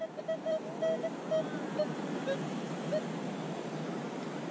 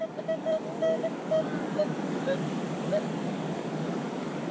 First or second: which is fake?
second